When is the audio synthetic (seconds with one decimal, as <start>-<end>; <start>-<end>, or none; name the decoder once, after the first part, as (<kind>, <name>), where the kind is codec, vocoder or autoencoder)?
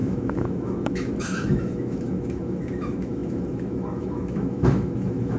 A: 0.0-5.4 (autoencoder, DAC-VAE)